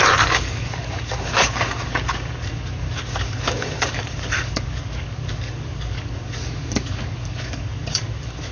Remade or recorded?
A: remade